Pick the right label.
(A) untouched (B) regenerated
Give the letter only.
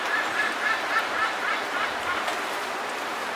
B